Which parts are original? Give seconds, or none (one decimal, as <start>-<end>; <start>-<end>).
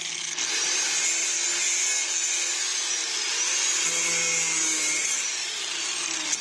0.0-6.4